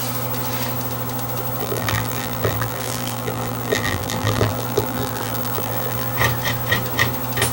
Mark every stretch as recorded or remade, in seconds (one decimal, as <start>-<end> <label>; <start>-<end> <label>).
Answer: 0.0-1.6 recorded; 1.6-6.1 remade; 6.1-7.5 recorded